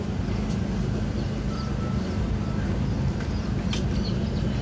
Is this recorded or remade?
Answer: recorded